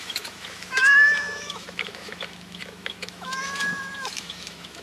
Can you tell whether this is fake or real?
fake